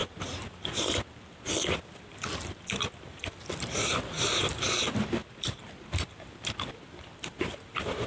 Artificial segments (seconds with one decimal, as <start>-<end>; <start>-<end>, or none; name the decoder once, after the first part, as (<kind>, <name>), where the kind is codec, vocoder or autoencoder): 0.0-8.1 (vocoder, BigVGAN v2)